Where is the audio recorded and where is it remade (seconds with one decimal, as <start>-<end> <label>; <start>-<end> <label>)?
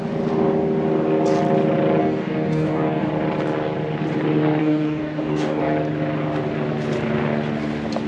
0.0-2.0 recorded; 2.0-3.1 remade; 3.1-4.6 recorded; 4.6-5.6 remade; 5.6-8.1 recorded